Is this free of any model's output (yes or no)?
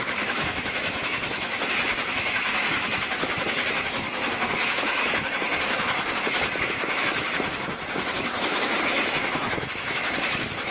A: no